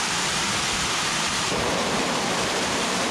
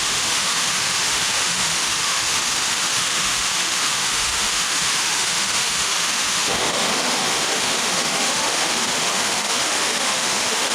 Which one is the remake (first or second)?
second